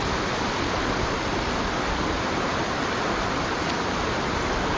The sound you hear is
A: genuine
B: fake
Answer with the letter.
A